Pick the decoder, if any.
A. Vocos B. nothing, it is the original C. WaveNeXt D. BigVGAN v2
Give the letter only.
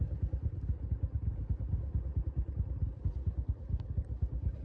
B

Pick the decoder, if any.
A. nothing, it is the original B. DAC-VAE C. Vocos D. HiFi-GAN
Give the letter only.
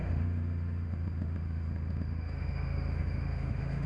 B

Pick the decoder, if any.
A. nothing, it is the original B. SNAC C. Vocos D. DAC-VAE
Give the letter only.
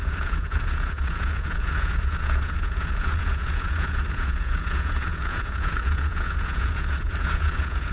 C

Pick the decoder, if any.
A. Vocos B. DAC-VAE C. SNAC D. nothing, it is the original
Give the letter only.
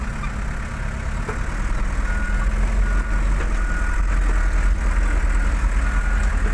D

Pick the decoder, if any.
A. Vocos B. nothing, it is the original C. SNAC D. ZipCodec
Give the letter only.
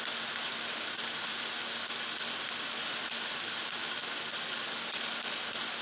B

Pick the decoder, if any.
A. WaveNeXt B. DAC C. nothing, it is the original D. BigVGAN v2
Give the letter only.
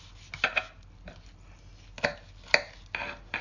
C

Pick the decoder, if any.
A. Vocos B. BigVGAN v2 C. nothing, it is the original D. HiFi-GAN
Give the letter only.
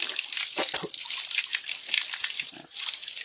B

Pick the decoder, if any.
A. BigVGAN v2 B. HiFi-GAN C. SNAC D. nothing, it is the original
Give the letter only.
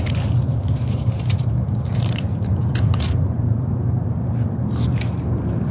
A